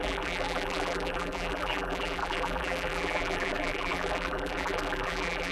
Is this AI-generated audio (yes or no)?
yes